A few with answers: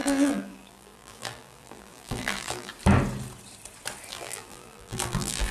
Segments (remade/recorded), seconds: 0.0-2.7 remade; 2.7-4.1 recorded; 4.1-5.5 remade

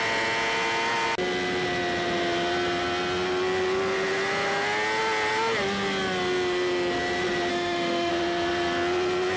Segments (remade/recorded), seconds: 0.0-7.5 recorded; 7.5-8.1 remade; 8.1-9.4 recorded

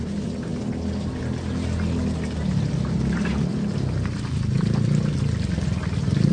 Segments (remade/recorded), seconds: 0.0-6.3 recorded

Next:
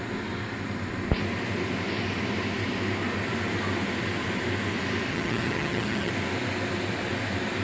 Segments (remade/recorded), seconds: 0.0-5.1 recorded; 5.1-6.1 remade; 6.1-7.6 recorded

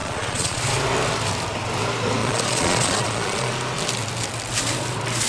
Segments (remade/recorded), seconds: 0.0-0.6 remade; 0.6-2.2 recorded; 2.2-3.5 remade; 3.5-5.3 recorded

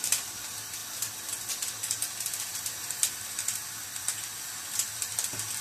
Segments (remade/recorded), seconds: 0.0-5.6 recorded

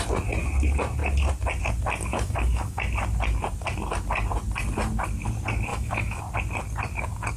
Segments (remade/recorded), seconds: 0.0-2.1 recorded; 2.1-2.8 remade; 2.8-5.7 recorded; 5.7-6.2 remade; 6.2-7.4 recorded

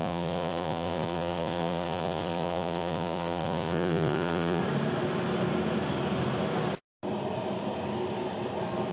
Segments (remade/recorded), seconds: 0.0-4.6 remade; 4.6-8.9 recorded